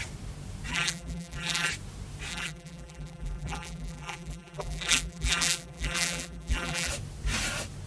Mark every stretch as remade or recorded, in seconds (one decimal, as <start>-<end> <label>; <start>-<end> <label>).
0.0-0.7 recorded; 0.7-1.7 remade; 1.7-2.3 recorded; 2.3-6.9 remade; 6.9-7.9 recorded